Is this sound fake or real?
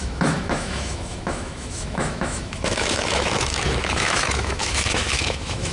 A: fake